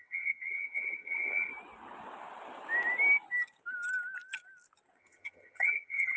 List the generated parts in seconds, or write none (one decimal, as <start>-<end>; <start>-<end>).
0.0-1.5; 5.0-6.2